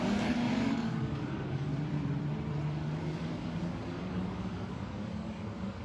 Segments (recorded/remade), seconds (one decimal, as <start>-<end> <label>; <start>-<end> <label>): 0.0-1.7 remade; 1.7-3.0 recorded; 3.0-5.8 remade